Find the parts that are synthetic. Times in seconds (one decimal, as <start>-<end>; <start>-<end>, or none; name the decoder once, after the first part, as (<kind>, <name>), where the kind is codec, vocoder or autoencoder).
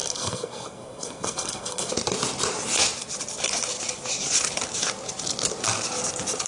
0.0-1.9 (codec, SNAC)